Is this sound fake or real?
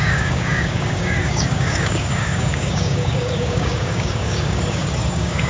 fake